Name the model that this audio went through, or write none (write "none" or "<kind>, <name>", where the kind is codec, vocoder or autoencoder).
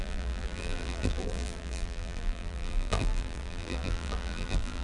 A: vocoder, BigVGAN v2